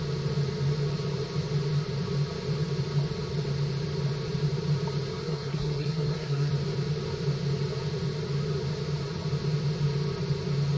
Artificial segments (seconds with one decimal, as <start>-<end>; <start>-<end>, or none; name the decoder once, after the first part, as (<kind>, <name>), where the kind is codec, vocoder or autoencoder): 5.2-6.5 (codec, SNAC)